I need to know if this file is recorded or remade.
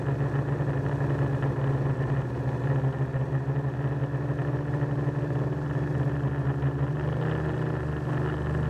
recorded